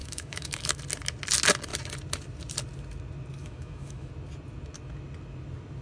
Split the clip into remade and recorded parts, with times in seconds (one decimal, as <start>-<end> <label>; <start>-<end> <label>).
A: 0.0-0.8 remade; 0.8-3.4 recorded; 3.4-4.1 remade; 4.1-5.8 recorded